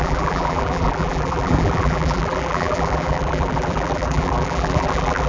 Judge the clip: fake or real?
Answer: fake